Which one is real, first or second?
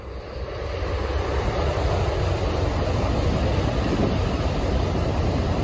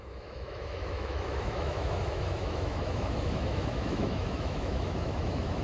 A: first